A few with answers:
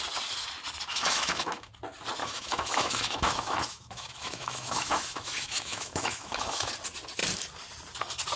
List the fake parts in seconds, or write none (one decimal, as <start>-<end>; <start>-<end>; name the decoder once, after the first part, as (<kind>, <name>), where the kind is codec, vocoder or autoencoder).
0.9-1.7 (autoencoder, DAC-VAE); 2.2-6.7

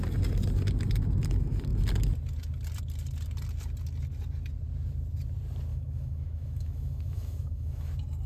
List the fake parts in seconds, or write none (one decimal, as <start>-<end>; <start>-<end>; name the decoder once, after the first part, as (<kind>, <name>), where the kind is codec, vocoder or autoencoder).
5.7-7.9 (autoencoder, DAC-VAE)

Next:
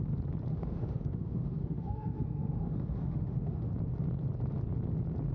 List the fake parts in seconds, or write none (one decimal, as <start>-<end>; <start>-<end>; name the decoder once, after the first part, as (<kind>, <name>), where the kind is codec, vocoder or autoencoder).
0.5-3.7 (autoencoder, DAC-VAE)

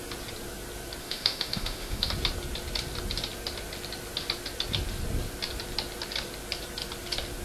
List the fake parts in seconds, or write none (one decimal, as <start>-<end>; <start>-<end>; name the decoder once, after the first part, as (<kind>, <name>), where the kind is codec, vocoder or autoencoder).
1.0-2.1 (autoencoder, DAC-VAE)

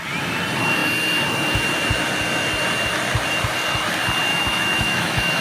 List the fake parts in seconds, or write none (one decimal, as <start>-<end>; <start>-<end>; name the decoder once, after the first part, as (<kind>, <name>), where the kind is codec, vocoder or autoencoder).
4.3-5.4 (autoencoder, DAC-VAE)

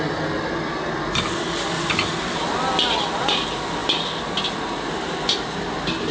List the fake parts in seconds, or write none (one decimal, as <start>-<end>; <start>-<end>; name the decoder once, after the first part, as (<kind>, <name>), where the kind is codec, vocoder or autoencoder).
none